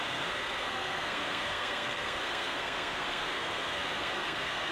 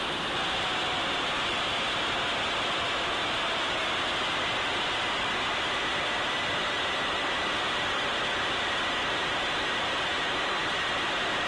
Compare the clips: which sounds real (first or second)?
second